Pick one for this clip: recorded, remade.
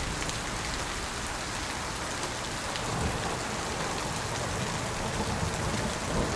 recorded